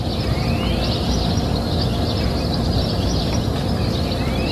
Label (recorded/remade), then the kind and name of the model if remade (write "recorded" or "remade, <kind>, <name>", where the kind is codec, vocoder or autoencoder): recorded